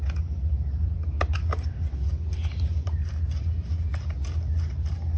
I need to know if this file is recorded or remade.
recorded